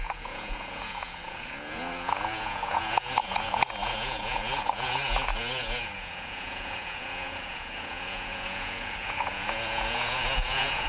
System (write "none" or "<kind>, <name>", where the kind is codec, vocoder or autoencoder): vocoder, Vocos